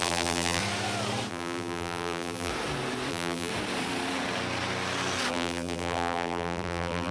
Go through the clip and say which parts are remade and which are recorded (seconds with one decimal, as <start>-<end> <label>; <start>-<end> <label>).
0.0-0.6 remade; 0.6-1.3 recorded; 1.3-2.5 remade; 2.5-3.1 recorded; 3.1-3.5 remade; 3.5-5.3 recorded; 5.3-7.1 remade